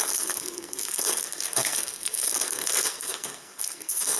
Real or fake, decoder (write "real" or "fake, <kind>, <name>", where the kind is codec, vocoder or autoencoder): fake, codec, SNAC